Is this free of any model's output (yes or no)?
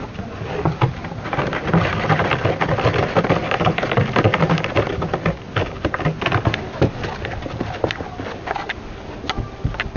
yes